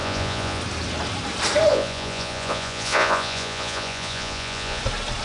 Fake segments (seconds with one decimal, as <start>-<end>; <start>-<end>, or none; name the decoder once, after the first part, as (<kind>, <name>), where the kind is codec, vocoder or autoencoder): 0.0-0.6 (vocoder, Vocos); 1.7-4.8